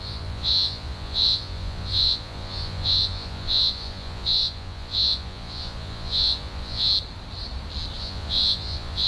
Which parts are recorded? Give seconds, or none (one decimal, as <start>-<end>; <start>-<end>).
6.9-8.0